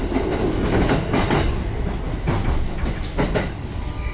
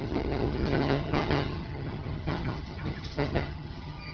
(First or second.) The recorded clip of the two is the first